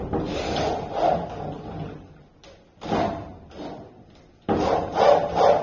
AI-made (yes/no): no